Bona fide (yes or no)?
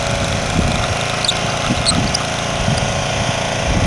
yes